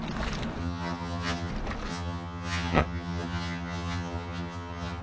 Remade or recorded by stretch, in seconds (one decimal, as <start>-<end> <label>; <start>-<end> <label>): 0.0-0.6 recorded; 0.6-1.5 remade; 1.5-1.9 recorded; 1.9-5.0 remade